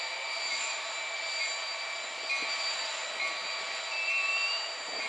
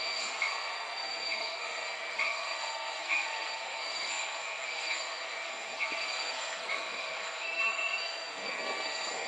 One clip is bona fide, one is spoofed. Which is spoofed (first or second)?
second